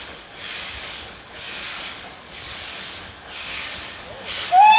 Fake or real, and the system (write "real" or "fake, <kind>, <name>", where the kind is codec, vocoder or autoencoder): fake, codec, DAC